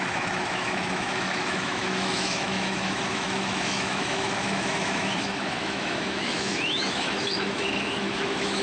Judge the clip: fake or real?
fake